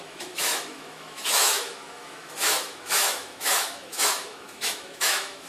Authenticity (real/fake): fake